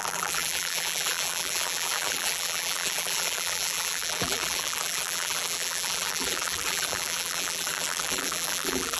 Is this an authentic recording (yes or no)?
no